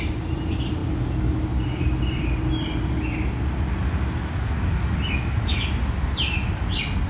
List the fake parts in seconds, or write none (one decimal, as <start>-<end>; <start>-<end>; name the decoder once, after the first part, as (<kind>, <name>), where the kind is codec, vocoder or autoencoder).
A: none